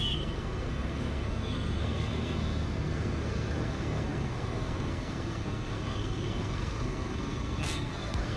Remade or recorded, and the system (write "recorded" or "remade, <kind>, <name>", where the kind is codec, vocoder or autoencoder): remade, codec, SNAC